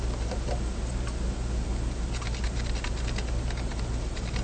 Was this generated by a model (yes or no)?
no